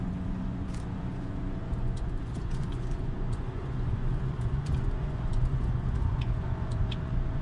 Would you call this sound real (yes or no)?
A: no